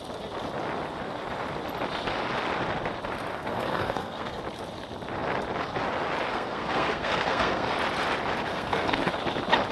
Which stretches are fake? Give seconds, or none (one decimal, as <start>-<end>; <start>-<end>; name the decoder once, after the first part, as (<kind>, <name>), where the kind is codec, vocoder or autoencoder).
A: 3.3-4.4 (codec, SNAC); 6.3-7.7; 8.5-9.1